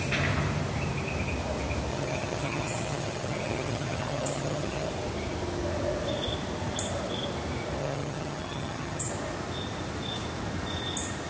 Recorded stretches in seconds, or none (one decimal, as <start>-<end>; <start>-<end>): 0.0-1.9; 4.9-7.8; 9.1-11.3